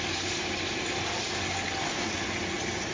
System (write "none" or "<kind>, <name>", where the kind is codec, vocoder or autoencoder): none